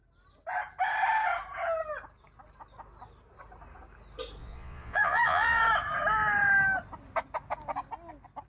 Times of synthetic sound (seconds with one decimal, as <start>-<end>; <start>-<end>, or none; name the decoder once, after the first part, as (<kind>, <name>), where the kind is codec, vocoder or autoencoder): 4.4-5.6 (vocoder, Vocos)